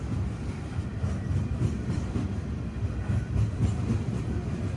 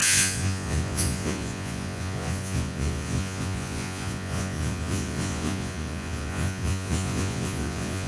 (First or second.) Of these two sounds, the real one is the first